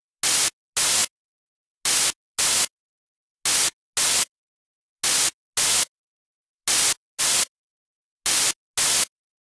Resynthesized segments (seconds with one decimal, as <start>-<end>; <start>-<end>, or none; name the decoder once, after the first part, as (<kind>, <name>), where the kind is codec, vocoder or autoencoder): none